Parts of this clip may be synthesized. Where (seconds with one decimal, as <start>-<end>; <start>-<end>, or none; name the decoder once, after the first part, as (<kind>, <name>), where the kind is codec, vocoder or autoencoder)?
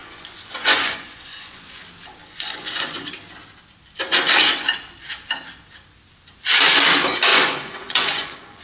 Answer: 0.0-1.8 (vocoder, Vocos); 2.2-3.1; 7.3-8.6